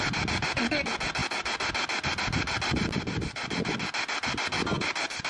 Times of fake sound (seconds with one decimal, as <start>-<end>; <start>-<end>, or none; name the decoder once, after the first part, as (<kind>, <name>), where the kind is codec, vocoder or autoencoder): none